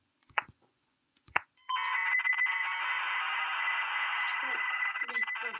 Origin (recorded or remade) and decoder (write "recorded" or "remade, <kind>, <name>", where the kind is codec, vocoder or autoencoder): remade, vocoder, Vocos